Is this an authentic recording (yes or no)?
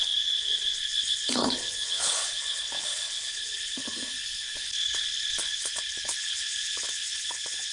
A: no